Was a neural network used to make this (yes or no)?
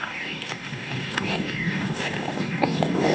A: yes